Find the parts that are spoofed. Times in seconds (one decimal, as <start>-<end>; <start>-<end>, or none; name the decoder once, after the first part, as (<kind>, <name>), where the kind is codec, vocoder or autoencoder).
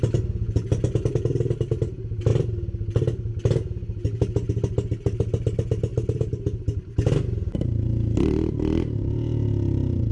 none